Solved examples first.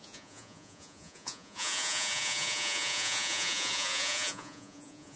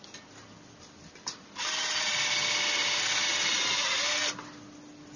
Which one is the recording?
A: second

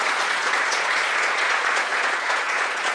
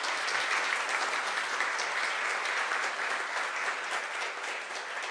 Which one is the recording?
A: second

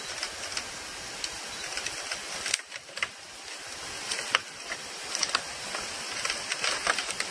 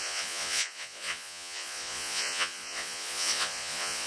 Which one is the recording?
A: first